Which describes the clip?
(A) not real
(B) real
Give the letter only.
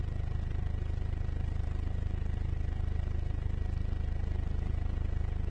B